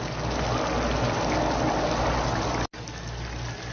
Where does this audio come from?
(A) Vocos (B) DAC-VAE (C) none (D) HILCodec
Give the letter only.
C